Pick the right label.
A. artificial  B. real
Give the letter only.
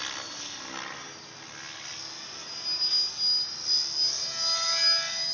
B